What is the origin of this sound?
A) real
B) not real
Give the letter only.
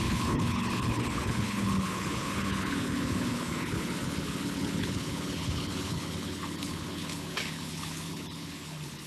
B